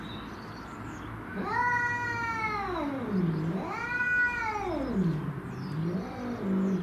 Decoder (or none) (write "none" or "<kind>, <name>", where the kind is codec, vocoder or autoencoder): none